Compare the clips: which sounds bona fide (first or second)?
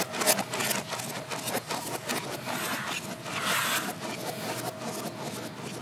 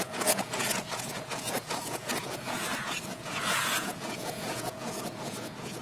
first